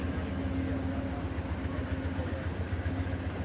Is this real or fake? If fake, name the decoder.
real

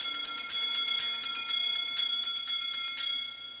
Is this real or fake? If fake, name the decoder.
real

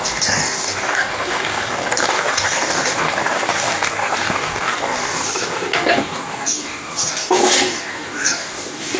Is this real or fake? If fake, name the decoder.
fake, codec, DAC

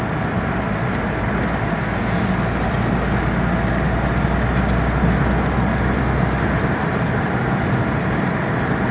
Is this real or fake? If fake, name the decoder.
real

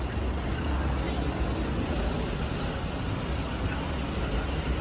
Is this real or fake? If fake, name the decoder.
real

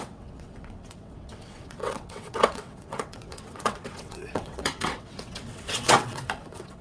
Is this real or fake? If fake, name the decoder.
fake, vocoder, WaveNeXt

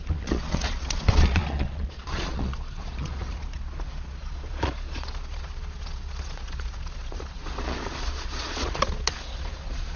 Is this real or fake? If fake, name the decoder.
fake, vocoder, Vocos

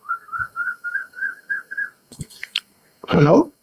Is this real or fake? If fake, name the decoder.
fake, codec, SNAC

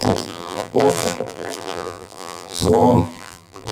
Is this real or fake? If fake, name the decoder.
fake, vocoder, BigVGAN v2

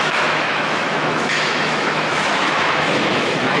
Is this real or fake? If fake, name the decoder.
fake, autoencoder, DAC-VAE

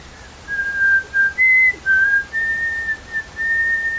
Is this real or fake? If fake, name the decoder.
real